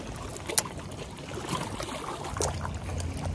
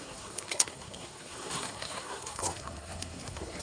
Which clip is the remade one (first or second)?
second